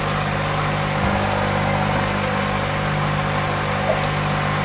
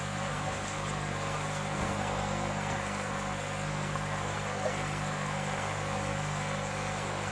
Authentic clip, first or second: first